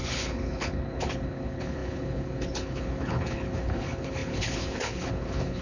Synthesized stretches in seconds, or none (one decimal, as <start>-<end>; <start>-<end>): 0.0-5.6